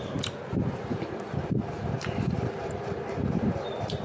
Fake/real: fake